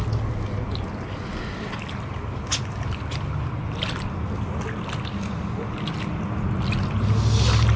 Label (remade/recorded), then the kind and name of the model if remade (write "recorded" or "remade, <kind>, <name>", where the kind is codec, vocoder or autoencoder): recorded